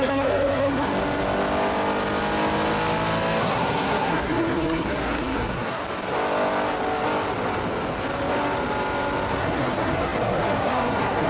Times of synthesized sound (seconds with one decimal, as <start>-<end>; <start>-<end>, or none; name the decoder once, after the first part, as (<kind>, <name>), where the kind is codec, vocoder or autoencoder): 0.0-0.9 (codec, SNAC); 3.4-5.8; 9.3-11.3